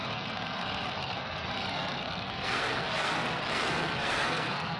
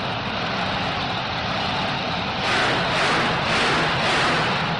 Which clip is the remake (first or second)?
first